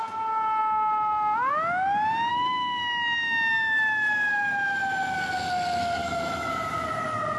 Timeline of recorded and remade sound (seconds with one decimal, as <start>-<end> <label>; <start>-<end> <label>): 0.0-2.3 recorded; 2.3-2.8 remade; 2.8-6.0 recorded; 6.0-6.5 remade; 6.5-7.4 recorded